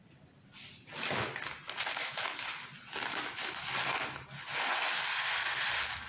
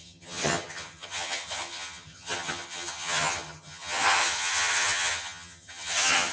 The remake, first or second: second